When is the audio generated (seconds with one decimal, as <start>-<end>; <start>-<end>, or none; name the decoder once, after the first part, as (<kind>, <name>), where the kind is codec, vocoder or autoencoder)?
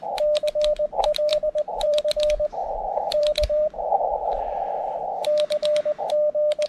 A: 1.3-2.0 (vocoder, BigVGAN v2); 2.6-5.1